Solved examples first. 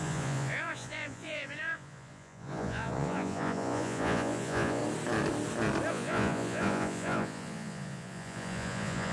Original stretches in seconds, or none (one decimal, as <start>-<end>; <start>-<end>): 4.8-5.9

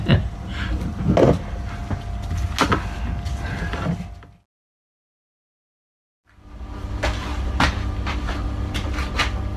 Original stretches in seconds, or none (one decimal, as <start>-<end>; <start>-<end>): 0.0-9.6

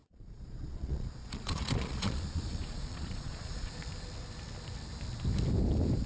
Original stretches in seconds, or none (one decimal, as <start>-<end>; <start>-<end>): 3.7-6.1

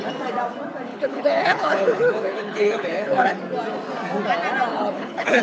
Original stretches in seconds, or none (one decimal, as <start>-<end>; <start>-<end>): 0.0-0.9; 3.4-4.7